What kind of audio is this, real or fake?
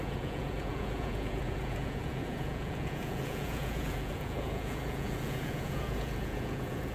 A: fake